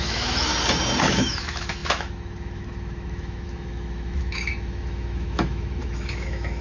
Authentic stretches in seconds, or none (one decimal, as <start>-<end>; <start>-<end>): 0.5-1.0